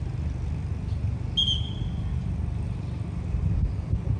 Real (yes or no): yes